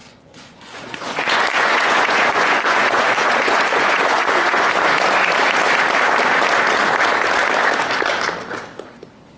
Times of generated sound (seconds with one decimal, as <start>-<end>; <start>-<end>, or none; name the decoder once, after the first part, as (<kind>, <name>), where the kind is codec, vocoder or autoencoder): 0.0-4.7 (vocoder, Vocos)